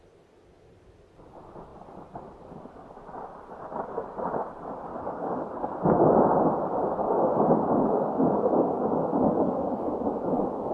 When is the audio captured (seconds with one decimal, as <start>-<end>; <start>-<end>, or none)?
0.0-4.9; 5.7-7.0